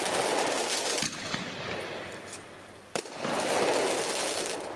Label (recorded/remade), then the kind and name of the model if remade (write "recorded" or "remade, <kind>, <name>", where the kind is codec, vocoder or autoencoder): recorded